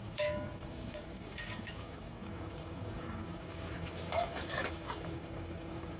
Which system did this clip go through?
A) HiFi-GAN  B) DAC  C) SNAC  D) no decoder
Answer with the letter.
B